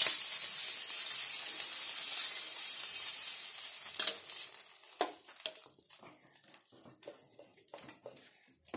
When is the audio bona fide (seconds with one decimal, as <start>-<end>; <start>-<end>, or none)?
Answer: 0.0-2.3; 3.7-7.5